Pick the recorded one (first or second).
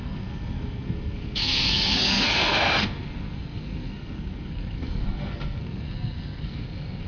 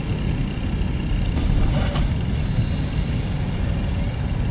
second